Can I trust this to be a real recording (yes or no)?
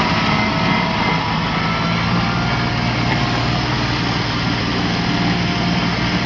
yes